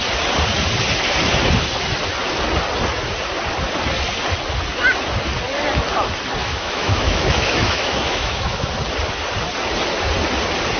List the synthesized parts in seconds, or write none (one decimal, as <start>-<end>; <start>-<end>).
6.4-8.7

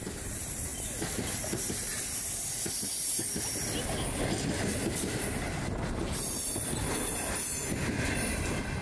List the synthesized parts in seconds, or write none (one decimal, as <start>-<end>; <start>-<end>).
none